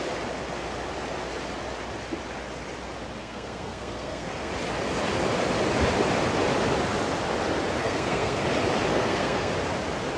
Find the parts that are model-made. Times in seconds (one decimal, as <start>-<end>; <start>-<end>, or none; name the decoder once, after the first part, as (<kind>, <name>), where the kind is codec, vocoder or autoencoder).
3.2-4.5 (codec, SNAC); 7.8-8.4; 8.9-9.5